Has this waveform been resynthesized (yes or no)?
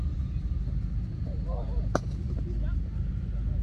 no